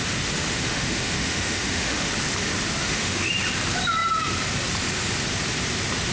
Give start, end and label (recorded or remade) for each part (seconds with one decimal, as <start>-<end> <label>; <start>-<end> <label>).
0.0-0.5 recorded; 0.5-2.1 remade; 2.1-2.8 recorded; 2.8-3.3 remade; 3.3-6.1 recorded